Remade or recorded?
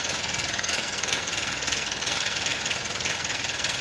remade